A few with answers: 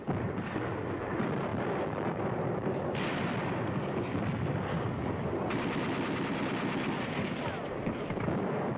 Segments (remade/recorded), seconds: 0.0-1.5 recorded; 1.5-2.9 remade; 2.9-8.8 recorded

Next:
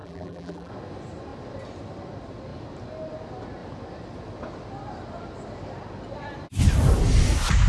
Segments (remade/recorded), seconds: 0.0-0.7 remade; 0.7-7.7 recorded

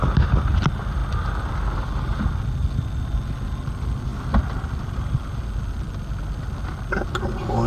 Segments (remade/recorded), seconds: 0.0-7.7 recorded

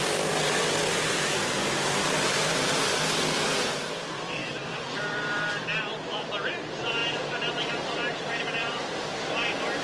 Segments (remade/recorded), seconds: 0.0-4.4 remade; 4.4-5.5 recorded; 5.5-9.8 remade

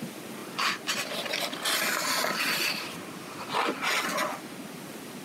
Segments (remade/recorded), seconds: 0.0-5.2 recorded